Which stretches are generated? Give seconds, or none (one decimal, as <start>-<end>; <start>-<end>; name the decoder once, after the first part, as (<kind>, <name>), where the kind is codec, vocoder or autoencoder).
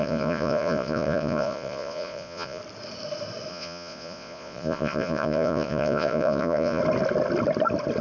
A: 0.0-2.6 (vocoder, Vocos); 3.5-6.8